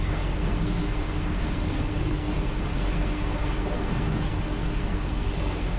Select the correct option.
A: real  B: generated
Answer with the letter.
B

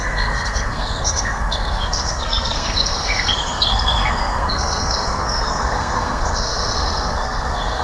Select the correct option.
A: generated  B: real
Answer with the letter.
A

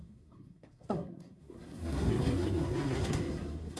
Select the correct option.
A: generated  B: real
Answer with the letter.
A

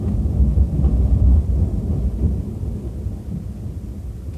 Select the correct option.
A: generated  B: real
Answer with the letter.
B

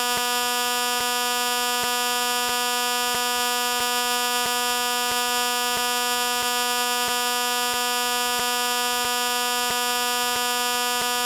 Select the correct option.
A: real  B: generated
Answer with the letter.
A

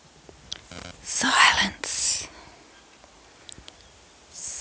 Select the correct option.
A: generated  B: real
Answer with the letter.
B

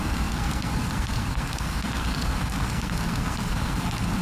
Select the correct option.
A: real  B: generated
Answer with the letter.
B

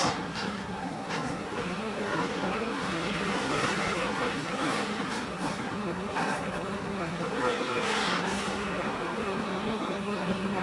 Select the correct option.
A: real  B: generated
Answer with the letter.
B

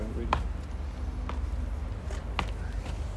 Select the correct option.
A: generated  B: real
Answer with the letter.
B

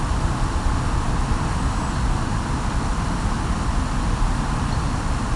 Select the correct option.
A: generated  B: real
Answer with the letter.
B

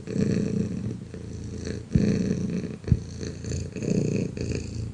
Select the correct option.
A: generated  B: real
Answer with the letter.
B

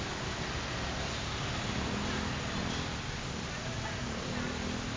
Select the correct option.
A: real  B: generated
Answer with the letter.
A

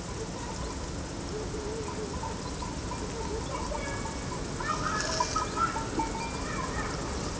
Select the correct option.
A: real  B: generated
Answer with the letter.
A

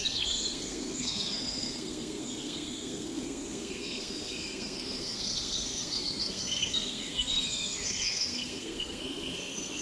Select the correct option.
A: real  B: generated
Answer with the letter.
B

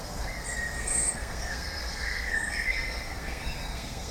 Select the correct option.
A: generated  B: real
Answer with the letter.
A